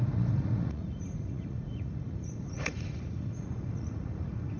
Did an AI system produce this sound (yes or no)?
yes